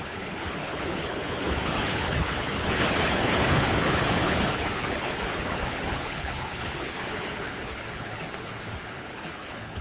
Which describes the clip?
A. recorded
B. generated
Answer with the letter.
B